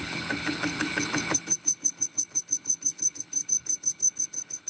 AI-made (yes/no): yes